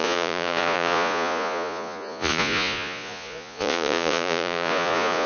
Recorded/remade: remade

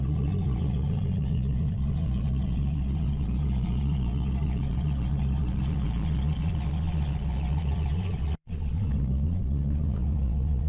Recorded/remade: remade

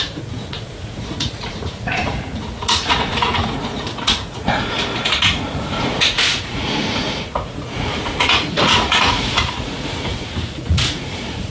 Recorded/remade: remade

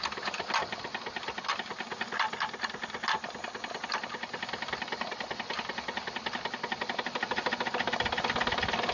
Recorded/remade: recorded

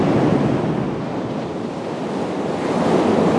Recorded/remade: recorded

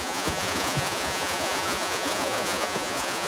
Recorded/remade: remade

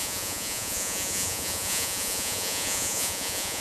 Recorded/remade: remade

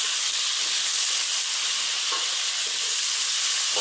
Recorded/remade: recorded